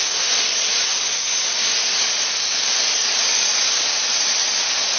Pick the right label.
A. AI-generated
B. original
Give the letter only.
B